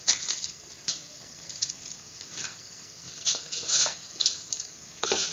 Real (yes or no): no